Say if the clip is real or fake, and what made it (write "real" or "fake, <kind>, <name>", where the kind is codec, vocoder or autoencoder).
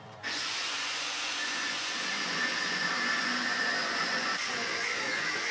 fake, vocoder, Vocos